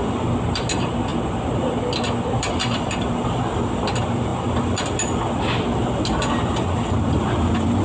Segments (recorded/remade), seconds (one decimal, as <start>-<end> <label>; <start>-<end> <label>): 0.0-7.8 recorded